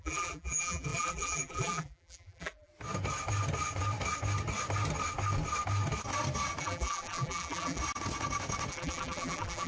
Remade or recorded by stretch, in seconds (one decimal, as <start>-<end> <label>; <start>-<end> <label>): 0.0-2.7 remade; 2.7-6.6 recorded; 6.6-7.8 remade; 7.8-8.7 recorded; 8.7-9.7 remade